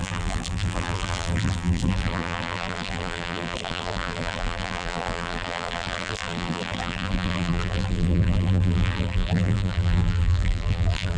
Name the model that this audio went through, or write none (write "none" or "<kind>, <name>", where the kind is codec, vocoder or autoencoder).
vocoder, BigVGAN v2